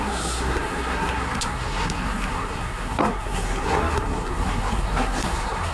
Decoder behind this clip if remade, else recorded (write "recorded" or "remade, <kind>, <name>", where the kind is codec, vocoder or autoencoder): remade, codec, SNAC